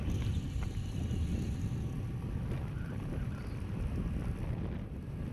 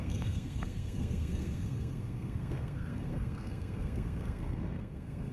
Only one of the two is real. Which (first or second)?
first